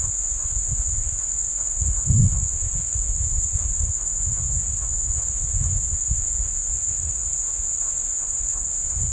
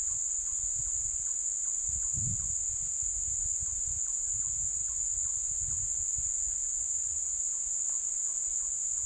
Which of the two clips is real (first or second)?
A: second